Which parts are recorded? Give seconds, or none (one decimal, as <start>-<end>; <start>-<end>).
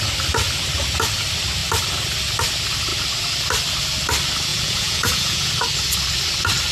0.0-4.5; 5.5-6.7